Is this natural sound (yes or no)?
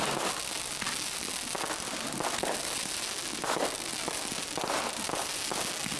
yes